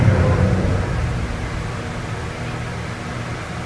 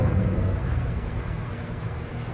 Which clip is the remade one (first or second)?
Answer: second